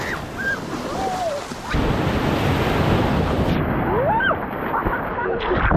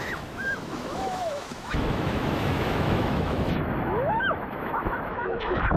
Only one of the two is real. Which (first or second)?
first